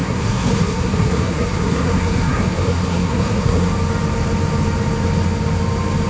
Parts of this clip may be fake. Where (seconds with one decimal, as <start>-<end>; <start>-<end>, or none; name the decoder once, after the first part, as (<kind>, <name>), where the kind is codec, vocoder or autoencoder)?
0.0-3.7 (codec, SNAC)